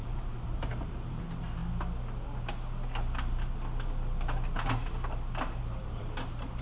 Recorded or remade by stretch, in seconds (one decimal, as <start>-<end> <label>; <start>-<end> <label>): 0.0-1.6 remade; 1.6-5.6 recorded; 5.6-6.6 remade